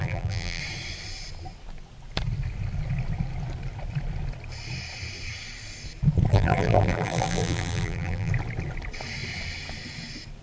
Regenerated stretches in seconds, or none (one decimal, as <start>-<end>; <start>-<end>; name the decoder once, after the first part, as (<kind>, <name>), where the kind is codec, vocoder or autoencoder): 0.0-0.6 (vocoder, BigVGAN v2); 6.3-8.3